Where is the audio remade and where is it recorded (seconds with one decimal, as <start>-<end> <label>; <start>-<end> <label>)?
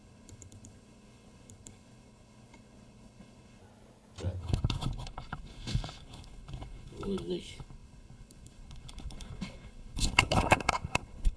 0.0-3.6 remade; 3.6-4.4 recorded; 4.4-11.4 remade